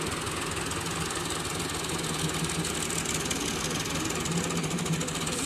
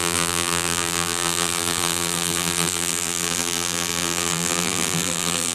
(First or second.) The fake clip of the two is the second